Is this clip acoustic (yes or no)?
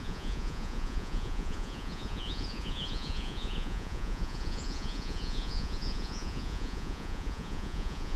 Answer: no